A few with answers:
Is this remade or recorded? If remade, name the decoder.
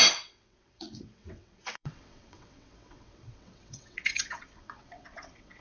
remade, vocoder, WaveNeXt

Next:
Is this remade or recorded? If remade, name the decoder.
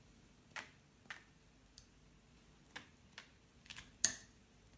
recorded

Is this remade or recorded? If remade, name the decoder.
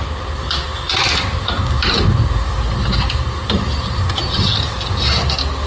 recorded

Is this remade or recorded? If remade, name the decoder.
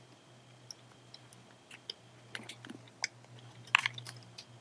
recorded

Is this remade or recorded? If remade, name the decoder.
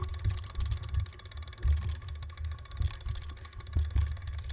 recorded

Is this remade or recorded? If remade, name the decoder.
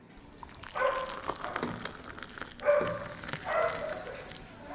recorded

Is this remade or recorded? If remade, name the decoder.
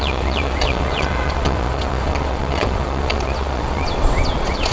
remade, vocoder, WaveNeXt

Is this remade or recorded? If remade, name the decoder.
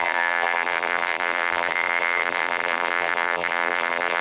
remade, vocoder, BigVGAN v2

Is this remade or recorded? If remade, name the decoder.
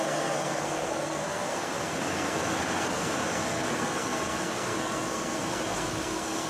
remade, codec, SNAC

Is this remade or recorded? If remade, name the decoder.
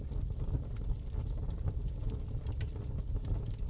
recorded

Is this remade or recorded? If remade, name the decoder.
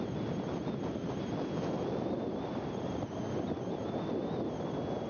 recorded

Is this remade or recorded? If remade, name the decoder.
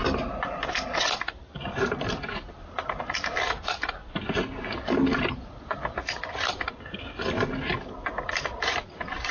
recorded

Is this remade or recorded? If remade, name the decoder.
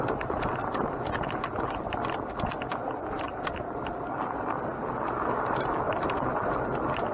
recorded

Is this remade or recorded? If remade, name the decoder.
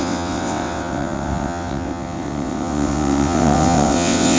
remade, vocoder, WaveNeXt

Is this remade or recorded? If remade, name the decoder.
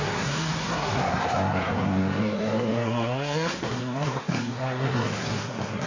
remade, codec, SNAC